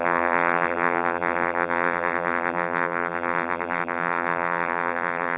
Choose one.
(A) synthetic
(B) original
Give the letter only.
A